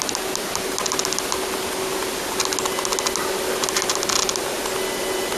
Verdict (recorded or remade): recorded